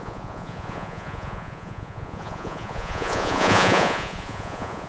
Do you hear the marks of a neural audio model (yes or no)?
yes